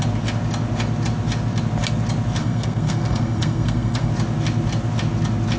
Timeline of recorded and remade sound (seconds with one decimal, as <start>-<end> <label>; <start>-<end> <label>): 0.0-2.4 recorded; 2.4-4.1 remade; 4.1-5.6 recorded